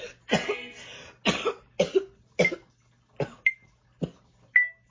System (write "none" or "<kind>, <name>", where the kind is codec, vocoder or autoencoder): none